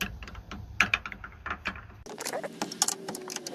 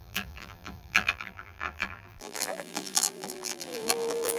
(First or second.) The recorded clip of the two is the first